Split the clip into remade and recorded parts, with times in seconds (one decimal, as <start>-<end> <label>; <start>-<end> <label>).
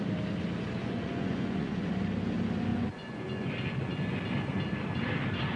0.0-0.8 recorded; 0.8-2.0 remade; 2.0-2.7 recorded; 2.7-3.5 remade; 3.5-5.6 recorded